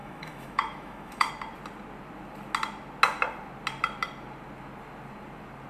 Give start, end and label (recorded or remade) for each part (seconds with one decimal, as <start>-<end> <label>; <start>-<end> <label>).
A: 0.0-1.3 remade; 1.3-5.7 recorded